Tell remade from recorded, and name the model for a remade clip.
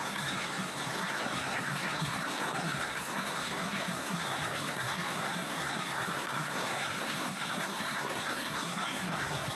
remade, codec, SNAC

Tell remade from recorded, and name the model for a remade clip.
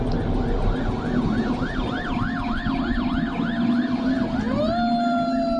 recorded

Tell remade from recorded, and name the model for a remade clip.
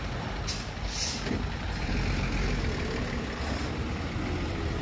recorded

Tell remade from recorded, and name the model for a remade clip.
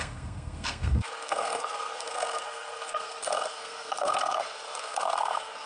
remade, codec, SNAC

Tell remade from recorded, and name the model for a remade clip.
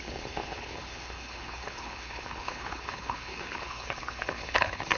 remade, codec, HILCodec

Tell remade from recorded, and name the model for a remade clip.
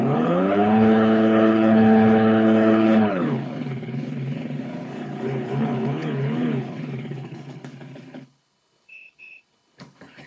remade, codec, HILCodec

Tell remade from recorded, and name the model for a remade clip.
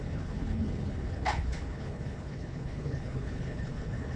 remade, codec, HILCodec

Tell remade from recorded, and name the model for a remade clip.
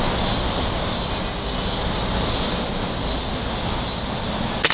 recorded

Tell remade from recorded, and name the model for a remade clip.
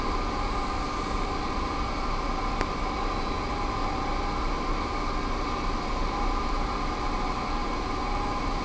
recorded